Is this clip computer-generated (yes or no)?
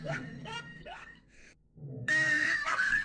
yes